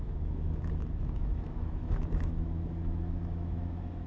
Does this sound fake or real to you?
fake